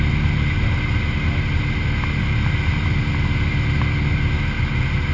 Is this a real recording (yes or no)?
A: yes